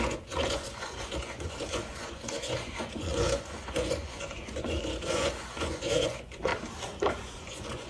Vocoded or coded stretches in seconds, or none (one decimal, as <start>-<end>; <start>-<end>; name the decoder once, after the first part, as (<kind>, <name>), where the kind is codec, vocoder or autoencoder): 0.0-6.5 (vocoder, Vocos); 7.1-7.9

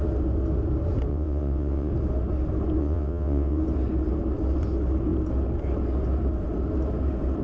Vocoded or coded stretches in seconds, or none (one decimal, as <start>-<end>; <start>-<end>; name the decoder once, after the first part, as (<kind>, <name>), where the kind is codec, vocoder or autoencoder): 1.1-1.9 (vocoder, WaveNeXt); 2.8-3.6